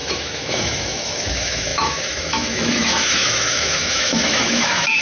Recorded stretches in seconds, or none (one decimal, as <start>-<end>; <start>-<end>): none